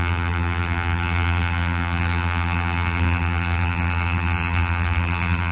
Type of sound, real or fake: fake